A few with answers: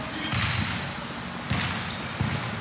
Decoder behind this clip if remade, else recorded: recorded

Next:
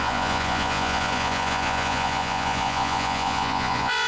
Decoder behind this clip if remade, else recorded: remade, vocoder, Vocos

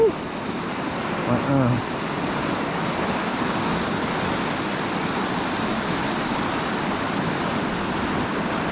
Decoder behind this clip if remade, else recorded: recorded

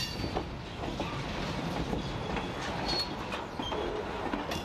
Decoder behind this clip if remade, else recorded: recorded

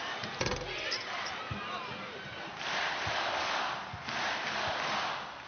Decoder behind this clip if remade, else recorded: recorded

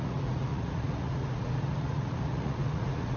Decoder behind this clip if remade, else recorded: remade, vocoder, Vocos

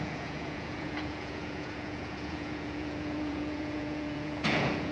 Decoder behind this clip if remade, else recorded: remade, vocoder, Vocos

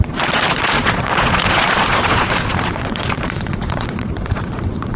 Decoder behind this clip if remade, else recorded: remade, vocoder, Vocos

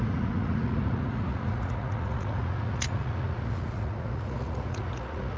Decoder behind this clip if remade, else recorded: remade, vocoder, Vocos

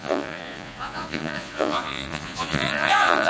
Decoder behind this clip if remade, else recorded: remade, vocoder, Vocos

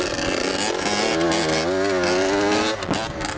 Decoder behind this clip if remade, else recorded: recorded